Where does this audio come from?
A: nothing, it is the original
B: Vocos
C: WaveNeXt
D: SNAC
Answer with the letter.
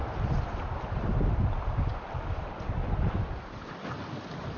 A